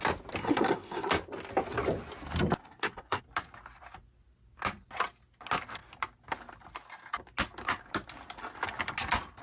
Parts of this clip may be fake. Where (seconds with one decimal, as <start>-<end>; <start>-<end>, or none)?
0.4-1.1; 2.6-3.2